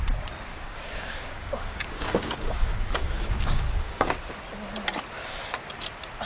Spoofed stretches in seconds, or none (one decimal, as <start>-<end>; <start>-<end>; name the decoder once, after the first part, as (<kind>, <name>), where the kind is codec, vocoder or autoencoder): 0.5-4.3 (codec, DAC)